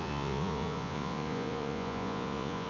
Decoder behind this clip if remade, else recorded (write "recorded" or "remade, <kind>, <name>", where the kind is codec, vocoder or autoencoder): remade, vocoder, Vocos